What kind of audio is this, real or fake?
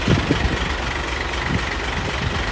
real